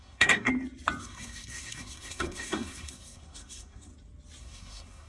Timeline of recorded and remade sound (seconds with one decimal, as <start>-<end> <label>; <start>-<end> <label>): 0.0-0.5 remade; 0.5-1.0 recorded; 1.0-3.9 remade; 3.9-4.4 recorded; 4.4-5.1 remade